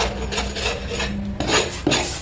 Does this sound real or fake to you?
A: real